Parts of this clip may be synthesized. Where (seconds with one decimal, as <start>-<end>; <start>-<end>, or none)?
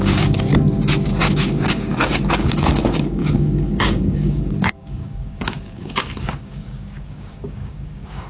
0.0-0.5; 1.2-8.3